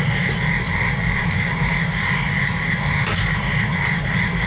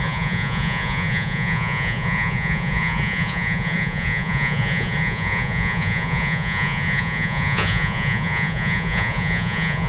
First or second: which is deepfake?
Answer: second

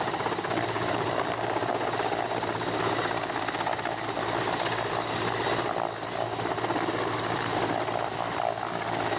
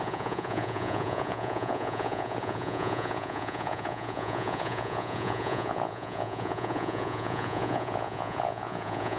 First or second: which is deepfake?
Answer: second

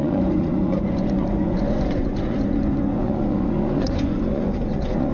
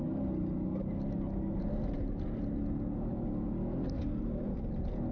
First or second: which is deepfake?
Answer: first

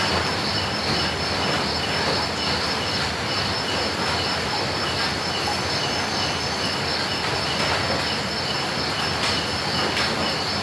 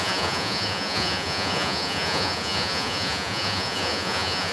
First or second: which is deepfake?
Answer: second